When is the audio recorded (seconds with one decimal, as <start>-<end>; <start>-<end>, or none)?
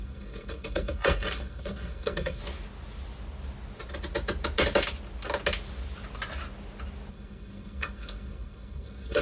2.4-7.1